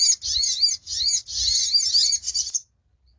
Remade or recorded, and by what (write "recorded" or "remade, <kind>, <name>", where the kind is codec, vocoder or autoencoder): recorded